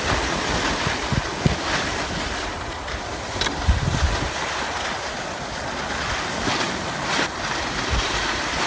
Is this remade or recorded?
recorded